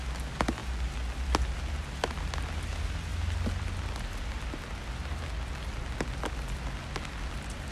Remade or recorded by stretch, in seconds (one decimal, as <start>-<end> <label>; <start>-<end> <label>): 0.0-7.7 recorded